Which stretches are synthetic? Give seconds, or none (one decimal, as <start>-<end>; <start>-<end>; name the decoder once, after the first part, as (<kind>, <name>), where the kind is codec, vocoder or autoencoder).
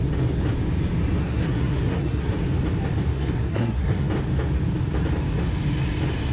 1.2-2.3 (codec, SNAC); 3.1-4.1